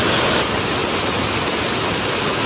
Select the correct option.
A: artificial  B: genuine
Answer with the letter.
B